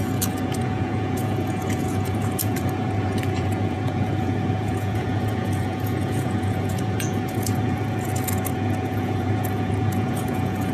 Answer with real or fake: fake